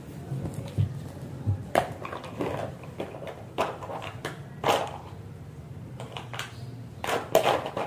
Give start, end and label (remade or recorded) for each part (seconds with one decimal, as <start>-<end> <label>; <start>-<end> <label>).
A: 0.0-2.6 recorded; 2.6-7.3 remade; 7.3-7.9 recorded